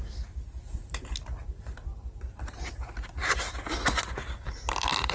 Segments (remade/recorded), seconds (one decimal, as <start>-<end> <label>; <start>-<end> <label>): 0.0-3.2 remade; 3.2-4.1 recorded; 4.1-5.1 remade